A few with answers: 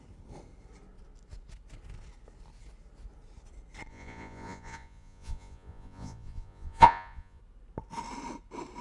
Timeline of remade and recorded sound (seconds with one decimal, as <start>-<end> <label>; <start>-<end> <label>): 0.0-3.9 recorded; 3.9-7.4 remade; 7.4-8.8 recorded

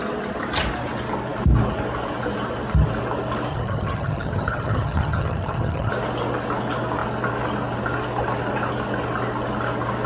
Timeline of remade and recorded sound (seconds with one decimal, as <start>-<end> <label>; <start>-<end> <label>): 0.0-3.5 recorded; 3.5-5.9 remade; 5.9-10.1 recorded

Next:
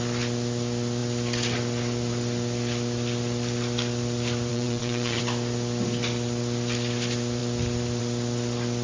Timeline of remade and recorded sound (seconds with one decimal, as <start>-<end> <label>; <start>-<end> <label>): 0.0-4.5 recorded; 4.5-5.2 remade; 5.2-8.8 recorded

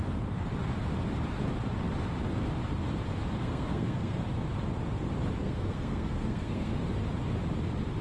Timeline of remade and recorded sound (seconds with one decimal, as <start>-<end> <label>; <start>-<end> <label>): 0.0-3.4 recorded; 3.4-4.2 remade; 4.2-5.4 recorded; 5.4-6.8 remade; 6.8-8.0 recorded

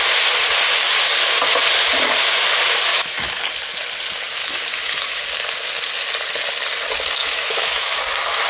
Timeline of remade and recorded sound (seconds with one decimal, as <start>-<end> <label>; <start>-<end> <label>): 0.0-2.9 recorded; 2.9-3.4 remade; 3.4-4.4 recorded; 4.4-5.2 remade; 5.2-7.2 recorded; 7.2-8.0 remade; 8.0-8.5 recorded